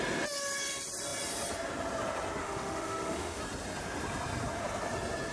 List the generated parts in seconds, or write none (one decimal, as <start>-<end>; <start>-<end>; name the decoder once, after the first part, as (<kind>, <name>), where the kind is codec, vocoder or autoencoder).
2.4-3.4 (autoencoder, DAC-VAE)